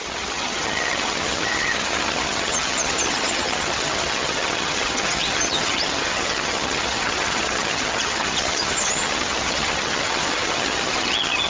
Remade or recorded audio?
remade